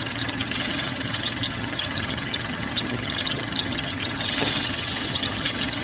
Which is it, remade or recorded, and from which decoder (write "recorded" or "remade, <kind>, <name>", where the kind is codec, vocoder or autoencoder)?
remade, vocoder, HiFi-GAN